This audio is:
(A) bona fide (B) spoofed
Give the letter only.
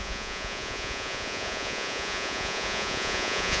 B